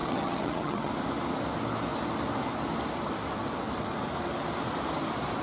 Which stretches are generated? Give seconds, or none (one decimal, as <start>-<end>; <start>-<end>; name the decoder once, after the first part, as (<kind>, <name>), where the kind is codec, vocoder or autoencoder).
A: 0.0-0.9 (vocoder, HiFi-GAN)